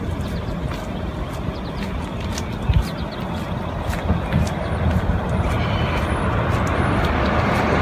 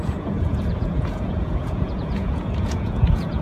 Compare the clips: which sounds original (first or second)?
first